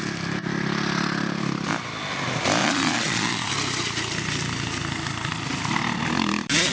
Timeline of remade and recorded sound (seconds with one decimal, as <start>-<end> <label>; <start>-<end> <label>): 0.0-2.6 recorded; 2.6-3.5 remade; 3.5-6.7 recorded